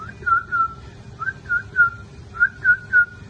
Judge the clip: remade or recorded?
recorded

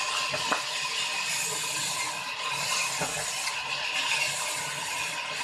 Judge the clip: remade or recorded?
recorded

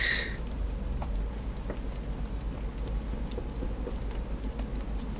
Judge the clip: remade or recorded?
recorded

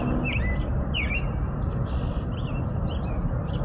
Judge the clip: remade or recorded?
recorded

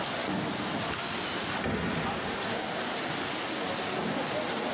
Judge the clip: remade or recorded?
recorded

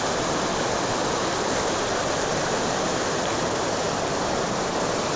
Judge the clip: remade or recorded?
recorded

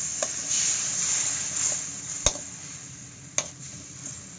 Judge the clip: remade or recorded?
recorded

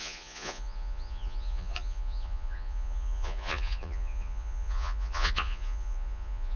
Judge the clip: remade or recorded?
remade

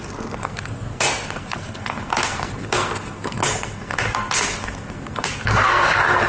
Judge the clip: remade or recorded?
remade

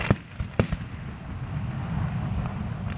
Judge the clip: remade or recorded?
recorded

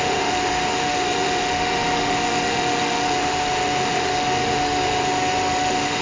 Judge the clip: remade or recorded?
remade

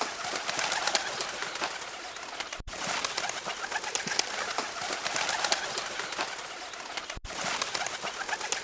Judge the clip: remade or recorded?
recorded